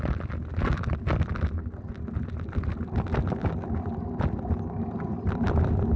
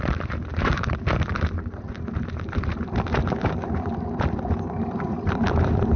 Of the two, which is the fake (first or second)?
second